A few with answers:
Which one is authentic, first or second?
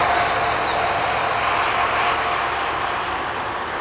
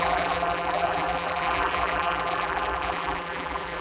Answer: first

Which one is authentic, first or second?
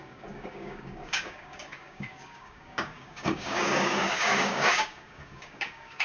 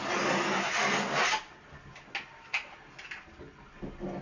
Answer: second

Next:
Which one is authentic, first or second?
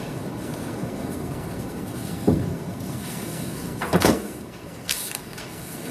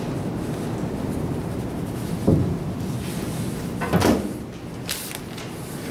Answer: second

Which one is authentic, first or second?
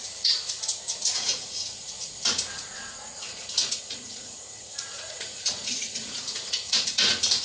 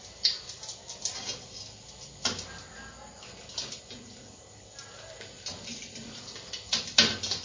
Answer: second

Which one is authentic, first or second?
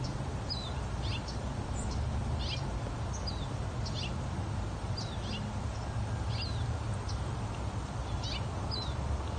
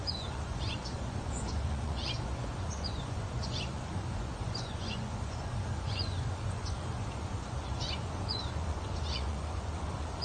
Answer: first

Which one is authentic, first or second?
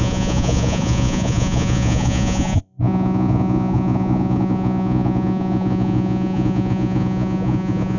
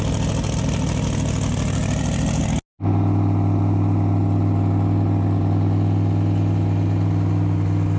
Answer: second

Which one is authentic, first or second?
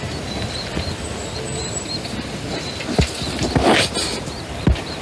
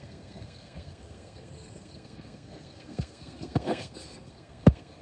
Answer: first